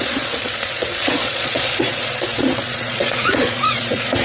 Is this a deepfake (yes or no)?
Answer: yes